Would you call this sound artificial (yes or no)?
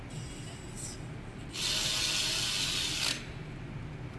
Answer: no